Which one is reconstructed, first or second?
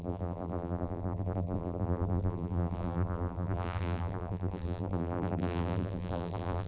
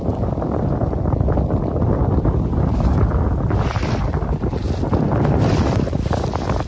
first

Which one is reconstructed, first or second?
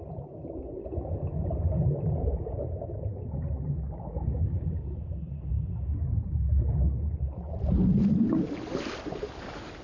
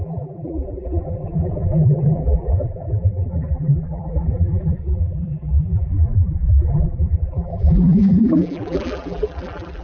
second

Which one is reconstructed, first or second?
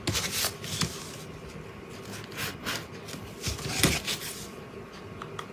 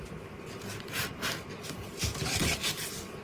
second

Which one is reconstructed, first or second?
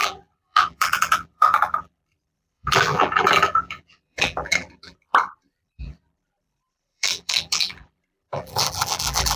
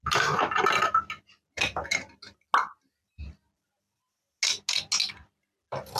first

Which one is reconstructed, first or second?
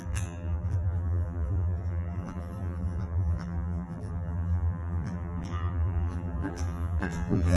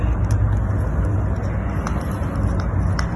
first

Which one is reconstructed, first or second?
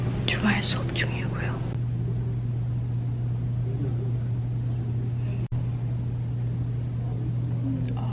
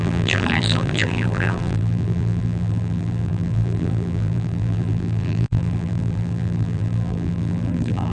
second